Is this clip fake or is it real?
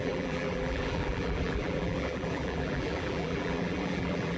fake